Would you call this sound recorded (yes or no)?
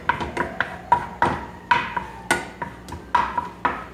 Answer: yes